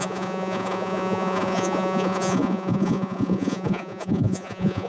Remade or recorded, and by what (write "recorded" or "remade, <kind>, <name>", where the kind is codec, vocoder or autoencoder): remade, vocoder, Vocos